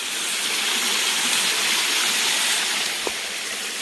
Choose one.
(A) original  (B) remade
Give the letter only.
A